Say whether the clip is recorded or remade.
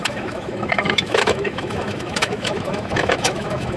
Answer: remade